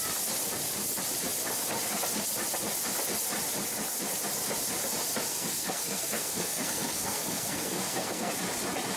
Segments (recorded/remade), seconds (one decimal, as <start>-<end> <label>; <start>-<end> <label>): 0.0-5.3 recorded; 5.3-8.3 remade; 8.3-9.0 recorded